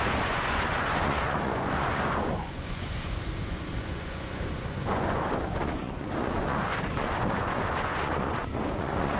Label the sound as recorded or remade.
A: remade